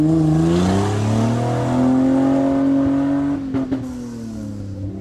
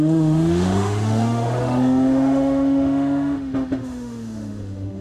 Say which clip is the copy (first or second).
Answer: second